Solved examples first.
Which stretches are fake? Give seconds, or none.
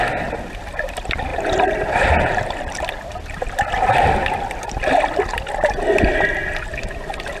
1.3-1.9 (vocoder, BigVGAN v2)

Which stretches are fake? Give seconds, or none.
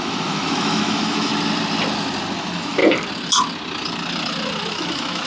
0.0-1.3 (autoencoder, DAC-VAE); 2.4-2.8; 4.7-5.3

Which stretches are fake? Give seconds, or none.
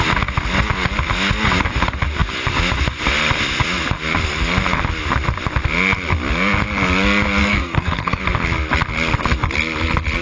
7.4-8.2 (codec, SNAC)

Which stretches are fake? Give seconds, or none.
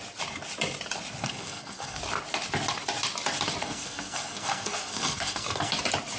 1.2-2.0 (codec, SNAC); 3.6-5.7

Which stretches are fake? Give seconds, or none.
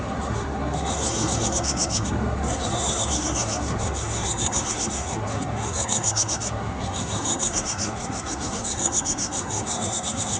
0.0-10.4 (codec, SNAC)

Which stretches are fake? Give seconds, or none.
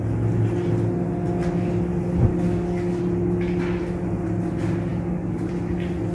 2.3-3.0 (codec, DAC); 4.9-5.5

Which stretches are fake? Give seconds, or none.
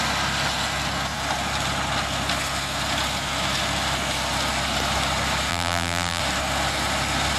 5.5-6.2 (vocoder, BigVGAN v2)